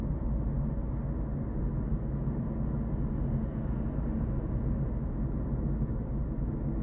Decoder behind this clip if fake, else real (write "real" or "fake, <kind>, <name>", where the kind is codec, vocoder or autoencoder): real